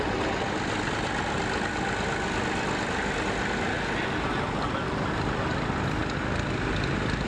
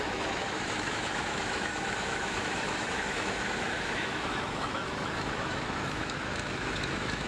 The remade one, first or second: second